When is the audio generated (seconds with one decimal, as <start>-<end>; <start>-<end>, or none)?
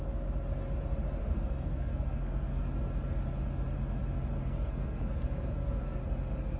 1.2-2.6; 4.4-6.0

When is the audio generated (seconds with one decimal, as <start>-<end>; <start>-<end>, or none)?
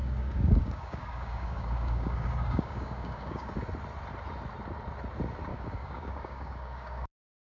0.0-3.5; 5.5-7.5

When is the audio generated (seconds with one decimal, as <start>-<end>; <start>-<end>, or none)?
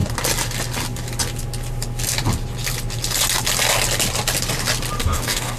5.0-5.6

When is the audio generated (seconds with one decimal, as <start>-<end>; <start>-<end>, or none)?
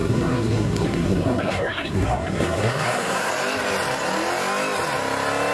0.0-3.3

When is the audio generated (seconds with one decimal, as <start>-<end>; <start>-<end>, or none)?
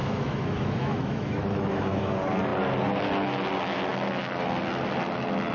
0.0-2.0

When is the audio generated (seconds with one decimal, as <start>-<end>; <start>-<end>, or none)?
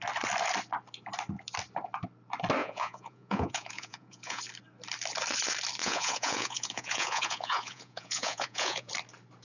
2.6-4.4; 5.8-8.9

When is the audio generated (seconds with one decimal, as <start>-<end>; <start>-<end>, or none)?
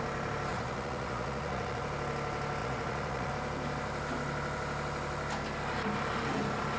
0.5-1.8; 2.6-3.3